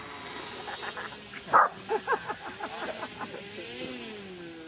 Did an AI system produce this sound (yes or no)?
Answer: no